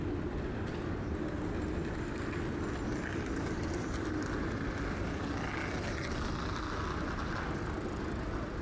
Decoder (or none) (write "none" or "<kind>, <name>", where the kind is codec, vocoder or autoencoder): none